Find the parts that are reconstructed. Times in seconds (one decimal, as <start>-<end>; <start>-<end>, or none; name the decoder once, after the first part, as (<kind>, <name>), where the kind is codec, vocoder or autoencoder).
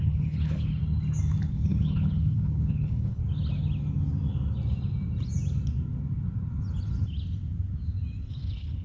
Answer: 0.0-0.8 (codec, HILCodec); 1.5-3.2; 8.3-8.8